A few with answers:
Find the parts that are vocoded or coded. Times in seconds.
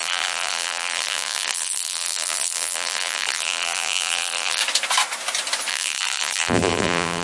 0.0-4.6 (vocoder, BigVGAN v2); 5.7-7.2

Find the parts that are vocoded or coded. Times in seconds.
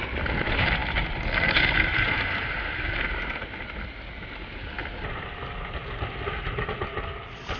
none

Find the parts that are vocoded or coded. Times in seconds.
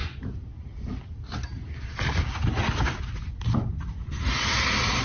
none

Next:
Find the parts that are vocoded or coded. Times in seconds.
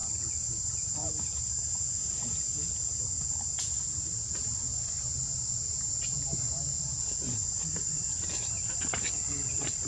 none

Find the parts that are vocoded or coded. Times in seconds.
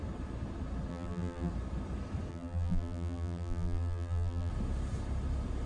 0.9-1.5 (vocoder, BigVGAN v2); 2.3-4.5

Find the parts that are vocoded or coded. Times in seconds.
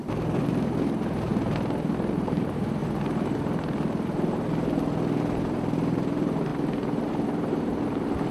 0.5-1.3 (vocoder, BigVGAN v2); 2.1-2.8; 5.2-8.3